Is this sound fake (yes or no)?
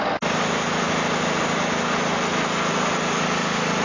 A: no